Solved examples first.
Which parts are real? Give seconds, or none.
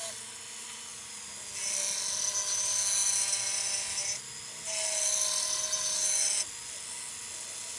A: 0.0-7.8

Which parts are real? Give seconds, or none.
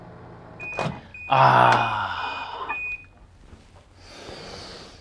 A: 0.0-5.0